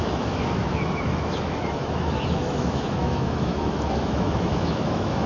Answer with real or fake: fake